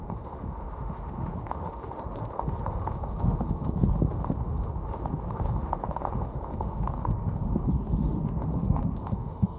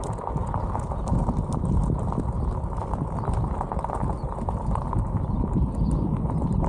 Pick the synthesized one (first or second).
first